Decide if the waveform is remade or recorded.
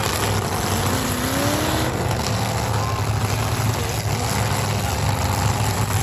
recorded